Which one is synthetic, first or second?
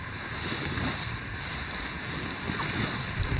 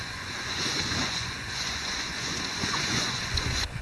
second